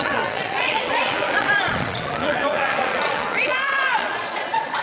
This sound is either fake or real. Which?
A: fake